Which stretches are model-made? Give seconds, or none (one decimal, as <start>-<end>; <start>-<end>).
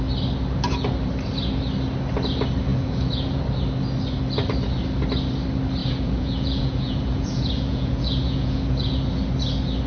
2.7-3.4; 5.8-8.9